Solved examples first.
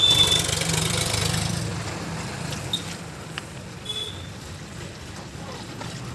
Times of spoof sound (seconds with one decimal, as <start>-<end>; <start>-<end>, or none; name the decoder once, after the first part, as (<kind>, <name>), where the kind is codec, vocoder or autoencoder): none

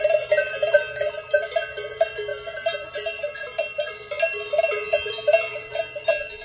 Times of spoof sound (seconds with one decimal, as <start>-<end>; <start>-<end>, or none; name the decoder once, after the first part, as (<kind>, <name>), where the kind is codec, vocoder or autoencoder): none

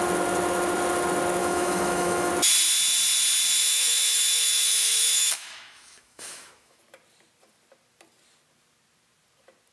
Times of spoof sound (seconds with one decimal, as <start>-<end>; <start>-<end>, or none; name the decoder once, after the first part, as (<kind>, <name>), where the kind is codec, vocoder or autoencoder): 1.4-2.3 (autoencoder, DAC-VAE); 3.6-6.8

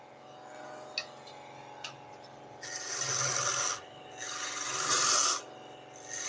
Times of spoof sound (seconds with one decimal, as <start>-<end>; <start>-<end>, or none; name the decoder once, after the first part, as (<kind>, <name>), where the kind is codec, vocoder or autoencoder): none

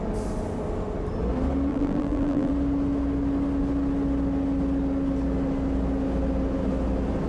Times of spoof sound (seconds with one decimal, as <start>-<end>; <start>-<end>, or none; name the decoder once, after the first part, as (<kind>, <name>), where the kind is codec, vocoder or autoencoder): 1.7-2.5 (vocoder, BigVGAN v2)

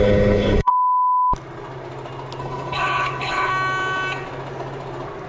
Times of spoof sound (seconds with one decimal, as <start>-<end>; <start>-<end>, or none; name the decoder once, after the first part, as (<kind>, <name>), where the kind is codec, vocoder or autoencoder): 0.0-0.7 (codec, HILCodec); 2.4-3.5

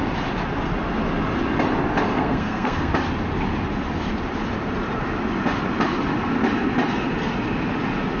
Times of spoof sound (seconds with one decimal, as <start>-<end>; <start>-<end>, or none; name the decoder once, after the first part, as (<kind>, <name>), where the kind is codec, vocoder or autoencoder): 2.1-2.9 (codec, SNAC)

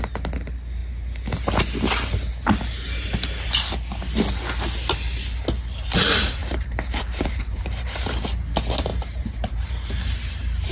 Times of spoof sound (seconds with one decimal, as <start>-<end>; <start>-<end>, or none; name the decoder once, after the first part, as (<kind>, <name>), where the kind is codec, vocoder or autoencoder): 6.4-7.5 (vocoder, BigVGAN v2); 8.9-10.7